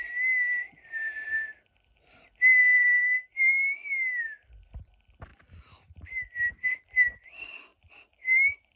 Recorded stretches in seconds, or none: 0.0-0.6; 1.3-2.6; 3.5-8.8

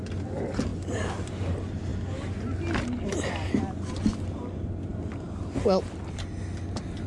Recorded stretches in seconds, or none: 0.0-0.7; 1.3-4.9; 5.8-7.1

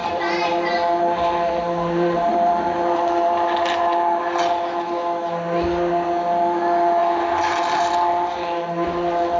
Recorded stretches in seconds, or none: 4.2-7.0; 7.9-9.4

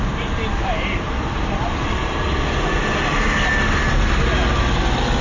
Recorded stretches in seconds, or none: 2.0-5.2

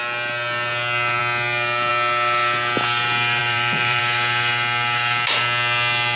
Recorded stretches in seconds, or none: 0.0-3.4; 4.0-6.2

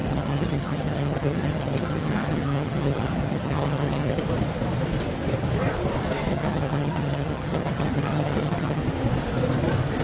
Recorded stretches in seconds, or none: 4.2-6.3; 8.8-10.0

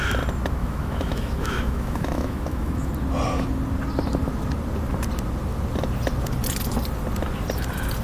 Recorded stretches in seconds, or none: 0.0-0.6; 2.9-8.0

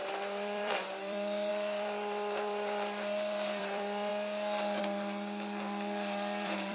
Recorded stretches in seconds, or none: 4.1-4.8